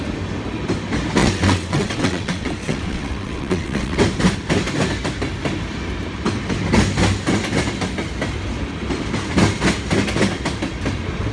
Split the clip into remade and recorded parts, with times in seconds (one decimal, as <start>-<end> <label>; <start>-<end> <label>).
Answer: 0.0-1.2 recorded; 1.2-4.0 remade; 4.0-11.3 recorded